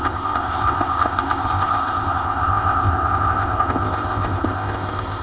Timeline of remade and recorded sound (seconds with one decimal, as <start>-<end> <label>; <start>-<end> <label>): 0.0-5.2 remade